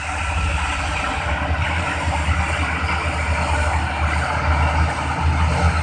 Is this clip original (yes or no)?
yes